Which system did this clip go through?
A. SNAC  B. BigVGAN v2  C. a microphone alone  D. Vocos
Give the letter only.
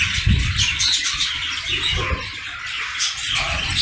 C